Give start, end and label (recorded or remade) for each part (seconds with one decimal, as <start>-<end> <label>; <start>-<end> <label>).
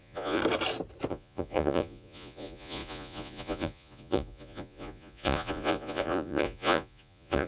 0.0-0.4 remade; 0.4-1.1 recorded; 1.1-7.5 remade